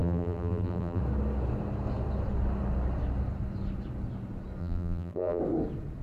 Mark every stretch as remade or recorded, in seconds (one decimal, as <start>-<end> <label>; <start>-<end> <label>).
0.0-1.0 remade; 1.0-4.6 recorded; 4.6-5.4 remade; 5.4-6.0 recorded